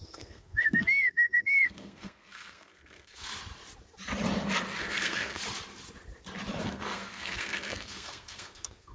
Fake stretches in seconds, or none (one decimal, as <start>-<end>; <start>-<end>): 0.0-3.3; 4.8-5.4; 6.6-8.9